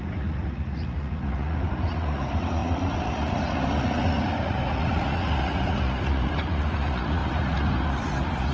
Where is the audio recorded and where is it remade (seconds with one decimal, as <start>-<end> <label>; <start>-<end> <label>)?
0.0-8.5 remade

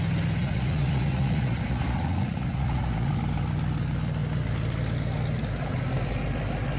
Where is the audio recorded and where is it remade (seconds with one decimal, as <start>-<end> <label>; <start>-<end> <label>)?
0.0-0.4 recorded; 0.4-3.1 remade; 3.1-6.8 recorded

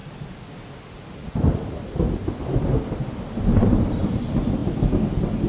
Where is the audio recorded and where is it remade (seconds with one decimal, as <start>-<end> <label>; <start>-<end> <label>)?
0.0-5.5 recorded

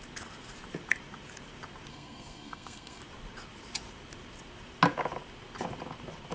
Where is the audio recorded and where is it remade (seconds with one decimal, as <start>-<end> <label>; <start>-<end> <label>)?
0.0-1.9 recorded; 1.9-3.0 remade; 3.0-6.3 recorded

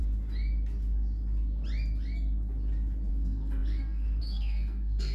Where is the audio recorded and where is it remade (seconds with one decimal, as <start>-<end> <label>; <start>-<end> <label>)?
0.0-3.1 recorded; 3.1-5.1 remade